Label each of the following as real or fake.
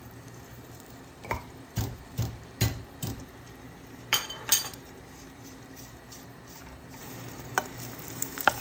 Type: fake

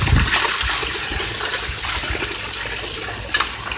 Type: real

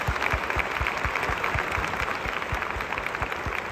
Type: real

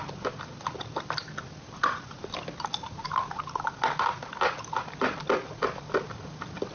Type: real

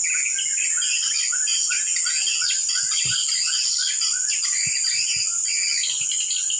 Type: real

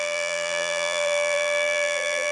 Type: fake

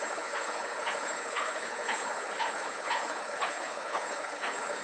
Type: fake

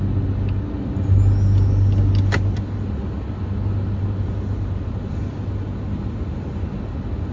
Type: real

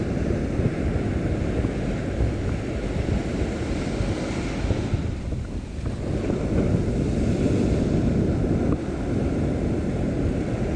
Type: real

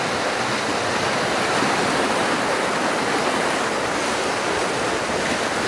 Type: real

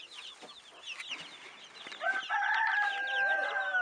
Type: real